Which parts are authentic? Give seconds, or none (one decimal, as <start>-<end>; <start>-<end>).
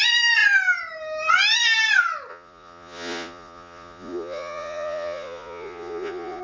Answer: 0.0-2.3